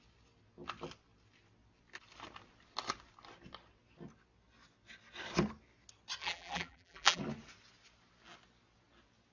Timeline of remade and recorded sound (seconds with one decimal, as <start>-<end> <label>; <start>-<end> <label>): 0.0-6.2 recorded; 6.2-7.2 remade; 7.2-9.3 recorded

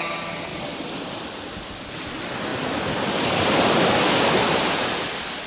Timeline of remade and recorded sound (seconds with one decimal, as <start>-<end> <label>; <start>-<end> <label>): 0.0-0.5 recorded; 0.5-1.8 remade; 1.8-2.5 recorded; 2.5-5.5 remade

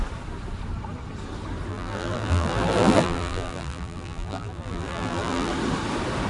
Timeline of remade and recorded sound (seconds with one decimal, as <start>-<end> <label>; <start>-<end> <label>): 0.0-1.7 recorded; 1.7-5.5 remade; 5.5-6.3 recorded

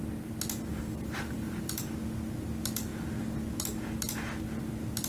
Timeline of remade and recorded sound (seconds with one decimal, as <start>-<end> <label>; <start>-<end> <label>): 0.0-0.7 recorded; 0.7-1.8 remade; 1.8-5.1 recorded